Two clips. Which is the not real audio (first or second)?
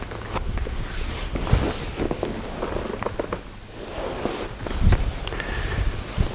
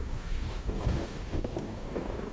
second